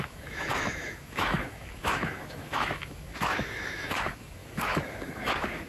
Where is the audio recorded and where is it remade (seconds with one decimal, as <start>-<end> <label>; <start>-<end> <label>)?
0.0-5.7 remade